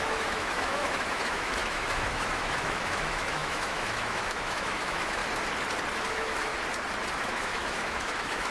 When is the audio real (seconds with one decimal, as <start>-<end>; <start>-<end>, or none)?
5.2-6.1; 6.5-7.1